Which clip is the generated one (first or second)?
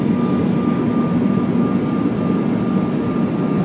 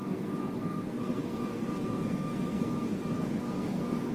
second